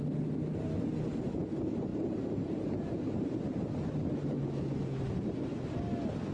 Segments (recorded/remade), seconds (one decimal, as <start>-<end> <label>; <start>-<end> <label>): 0.0-1.9 recorded; 1.9-4.4 remade; 4.4-6.3 recorded